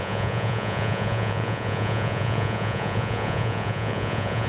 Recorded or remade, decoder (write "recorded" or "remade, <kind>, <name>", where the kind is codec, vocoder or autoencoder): remade, vocoder, Vocos